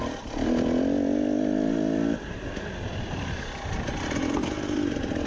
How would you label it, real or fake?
real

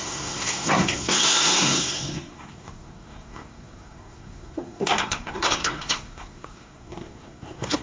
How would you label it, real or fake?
fake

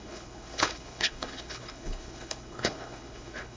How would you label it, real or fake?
fake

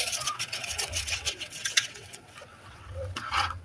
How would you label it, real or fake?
fake